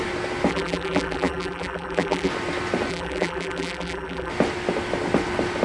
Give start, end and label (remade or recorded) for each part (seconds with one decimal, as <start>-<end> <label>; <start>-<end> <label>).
0.0-0.5 recorded; 0.5-2.3 remade; 2.3-2.9 recorded; 2.9-4.3 remade; 4.3-5.6 recorded